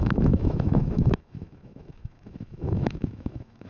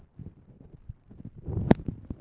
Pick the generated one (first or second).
first